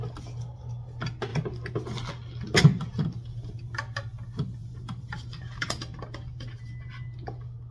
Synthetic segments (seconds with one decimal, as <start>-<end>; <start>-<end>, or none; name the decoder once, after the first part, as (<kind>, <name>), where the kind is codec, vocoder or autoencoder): 4.6-6.7 (vocoder, BigVGAN v2)